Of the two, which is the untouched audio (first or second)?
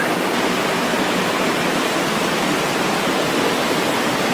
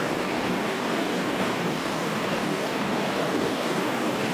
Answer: first